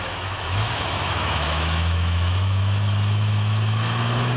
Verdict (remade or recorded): remade